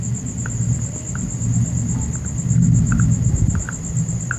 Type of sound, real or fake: real